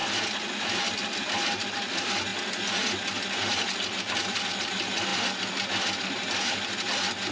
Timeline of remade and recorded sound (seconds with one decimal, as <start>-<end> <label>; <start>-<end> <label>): 0.0-7.3 recorded